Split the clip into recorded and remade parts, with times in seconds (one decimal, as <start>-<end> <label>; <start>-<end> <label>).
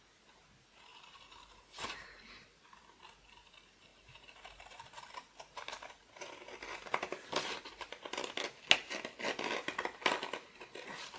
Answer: 0.0-0.9 recorded; 0.9-2.8 remade; 2.8-3.9 recorded; 3.9-6.0 remade; 6.0-11.2 recorded